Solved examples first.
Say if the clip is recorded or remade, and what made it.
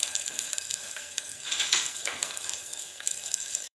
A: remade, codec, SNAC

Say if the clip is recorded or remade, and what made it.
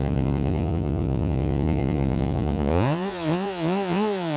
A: remade, vocoder, Vocos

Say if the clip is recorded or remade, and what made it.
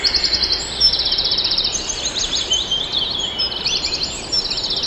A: recorded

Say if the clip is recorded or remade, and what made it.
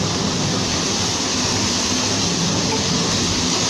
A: recorded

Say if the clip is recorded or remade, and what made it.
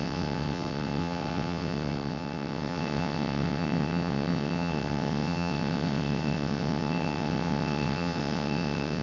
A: remade, vocoder, WaveNeXt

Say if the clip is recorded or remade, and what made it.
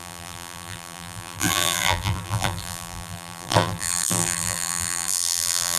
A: remade, vocoder, BigVGAN v2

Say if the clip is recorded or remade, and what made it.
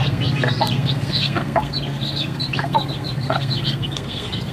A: remade, codec, SNAC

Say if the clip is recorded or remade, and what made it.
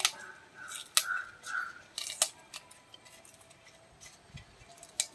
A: recorded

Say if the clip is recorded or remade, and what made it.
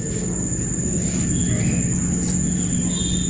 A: recorded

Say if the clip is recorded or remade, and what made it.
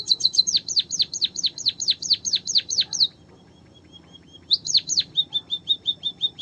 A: remade, vocoder, BigVGAN v2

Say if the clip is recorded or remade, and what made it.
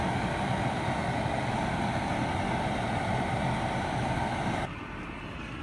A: recorded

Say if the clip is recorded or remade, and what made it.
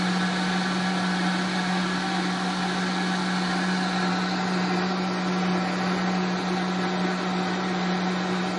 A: recorded